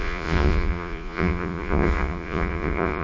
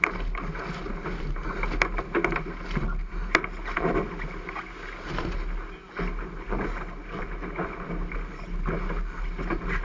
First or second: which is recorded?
second